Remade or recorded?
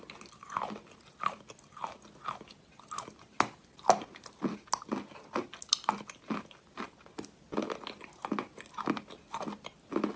recorded